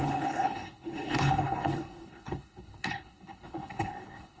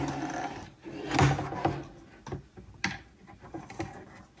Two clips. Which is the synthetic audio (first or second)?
first